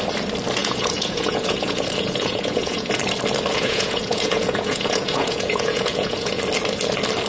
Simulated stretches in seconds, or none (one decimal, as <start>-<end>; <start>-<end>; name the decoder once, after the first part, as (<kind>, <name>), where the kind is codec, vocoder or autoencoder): 0.6-3.0 (vocoder, Vocos); 3.5-6.4